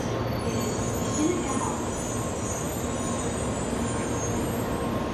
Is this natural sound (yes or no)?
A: yes